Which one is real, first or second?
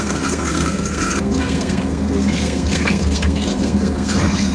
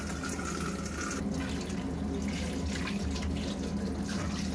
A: second